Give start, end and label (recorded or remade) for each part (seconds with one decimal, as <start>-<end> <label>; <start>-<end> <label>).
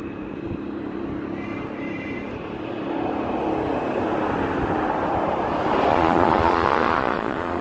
0.0-5.9 recorded; 5.9-7.6 remade